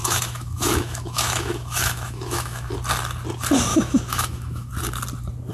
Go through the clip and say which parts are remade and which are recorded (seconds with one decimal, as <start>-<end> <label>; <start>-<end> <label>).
0.0-2.7 remade; 2.7-3.7 recorded; 3.7-4.7 remade; 4.7-5.5 recorded